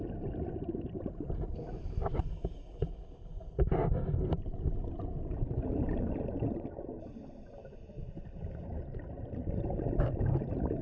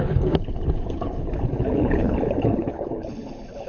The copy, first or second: second